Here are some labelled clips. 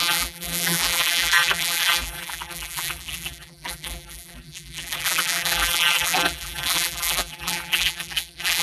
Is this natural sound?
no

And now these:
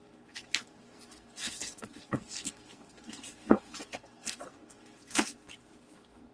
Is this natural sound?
no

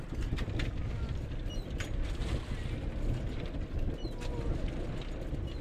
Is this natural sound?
yes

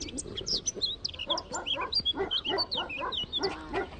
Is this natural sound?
yes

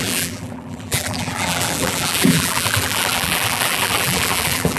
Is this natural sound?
no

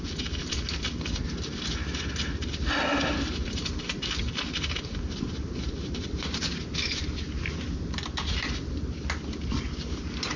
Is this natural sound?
yes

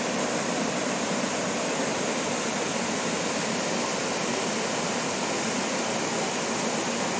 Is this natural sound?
yes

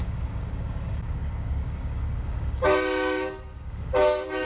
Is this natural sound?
no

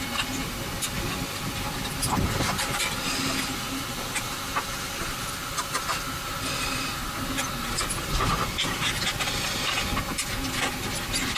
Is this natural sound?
yes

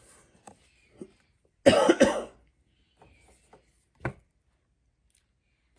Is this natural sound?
yes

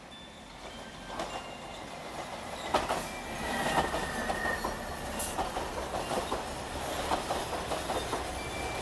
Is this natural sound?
yes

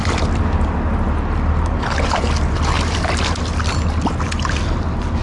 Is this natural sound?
yes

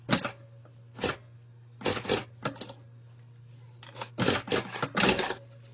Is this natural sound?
yes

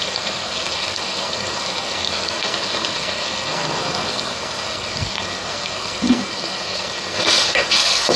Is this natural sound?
no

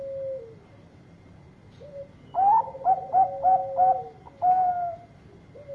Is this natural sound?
yes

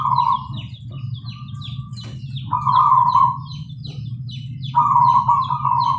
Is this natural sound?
yes